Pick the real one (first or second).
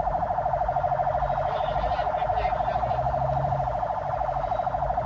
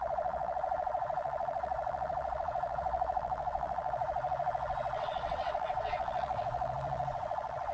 first